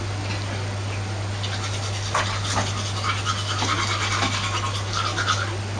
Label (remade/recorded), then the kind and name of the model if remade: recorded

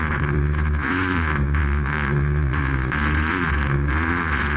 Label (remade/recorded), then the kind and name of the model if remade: remade, vocoder, Vocos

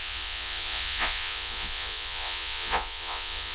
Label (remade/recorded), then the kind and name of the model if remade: remade, vocoder, Vocos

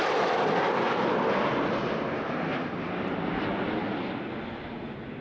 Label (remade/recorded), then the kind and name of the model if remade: recorded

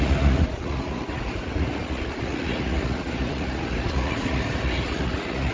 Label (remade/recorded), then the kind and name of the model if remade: remade, vocoder, Vocos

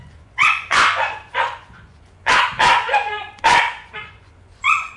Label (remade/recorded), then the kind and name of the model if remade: remade, vocoder, Vocos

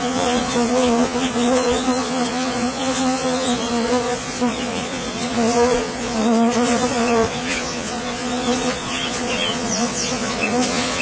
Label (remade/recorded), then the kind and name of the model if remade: remade, vocoder, Vocos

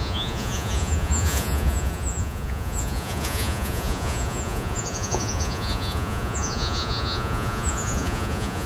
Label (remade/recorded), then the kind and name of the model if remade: remade, vocoder, Vocos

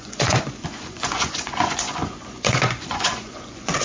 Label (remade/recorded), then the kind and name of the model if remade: remade, vocoder, Vocos